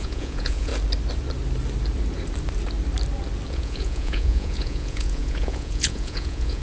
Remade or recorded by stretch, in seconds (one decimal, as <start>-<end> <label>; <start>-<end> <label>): 0.0-0.7 remade; 0.7-3.5 recorded; 3.5-6.6 remade